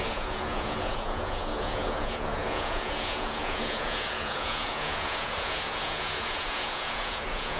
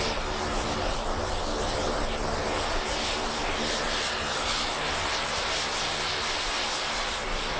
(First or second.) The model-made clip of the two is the first